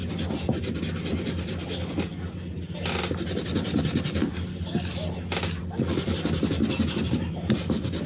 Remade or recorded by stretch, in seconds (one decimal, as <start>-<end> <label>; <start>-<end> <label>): 0.0-8.1 recorded